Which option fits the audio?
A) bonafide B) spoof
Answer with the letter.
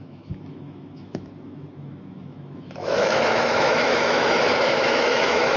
B